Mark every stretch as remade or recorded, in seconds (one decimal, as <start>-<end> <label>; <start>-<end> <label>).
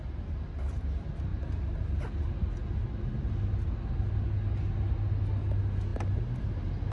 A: 0.0-6.9 recorded